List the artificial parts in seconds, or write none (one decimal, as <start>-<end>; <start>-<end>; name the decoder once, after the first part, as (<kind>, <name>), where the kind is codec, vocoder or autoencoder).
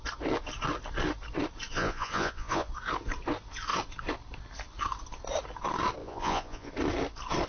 1.7-2.7 (vocoder, Vocos); 6.0-6.7